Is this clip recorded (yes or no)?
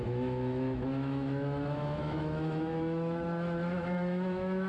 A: no